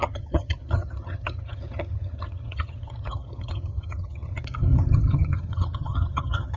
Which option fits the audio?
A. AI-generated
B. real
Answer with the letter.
A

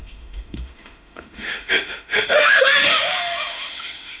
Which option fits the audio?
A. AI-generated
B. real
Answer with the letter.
A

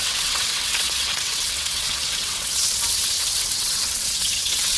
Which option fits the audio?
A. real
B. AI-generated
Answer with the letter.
B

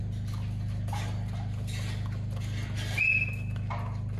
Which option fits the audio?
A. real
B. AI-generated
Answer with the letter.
A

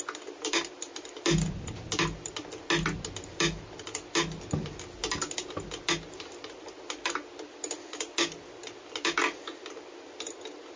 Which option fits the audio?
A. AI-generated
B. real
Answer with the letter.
B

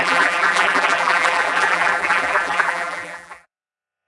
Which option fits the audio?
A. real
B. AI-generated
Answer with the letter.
B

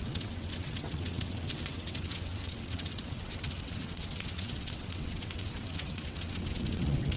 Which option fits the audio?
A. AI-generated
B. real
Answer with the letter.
A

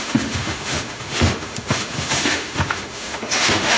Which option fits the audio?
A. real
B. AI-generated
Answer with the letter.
B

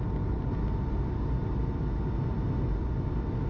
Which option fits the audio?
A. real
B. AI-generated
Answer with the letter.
A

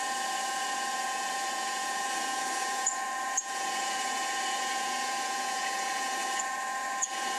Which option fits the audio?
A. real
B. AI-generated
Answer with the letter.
B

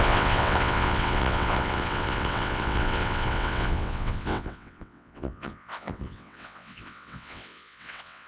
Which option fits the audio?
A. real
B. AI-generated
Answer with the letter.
B